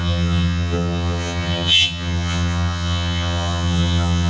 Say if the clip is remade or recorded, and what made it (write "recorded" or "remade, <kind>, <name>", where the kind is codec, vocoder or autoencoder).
remade, vocoder, HiFi-GAN